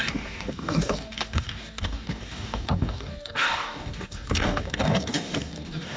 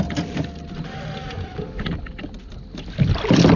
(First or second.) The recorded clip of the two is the second